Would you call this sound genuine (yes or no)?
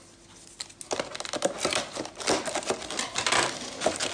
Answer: yes